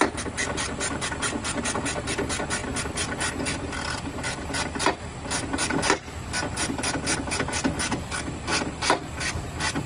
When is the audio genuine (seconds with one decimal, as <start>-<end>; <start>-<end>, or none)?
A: 0.0-9.9